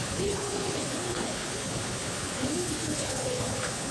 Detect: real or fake fake